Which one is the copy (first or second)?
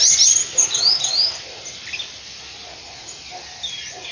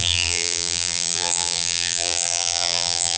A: second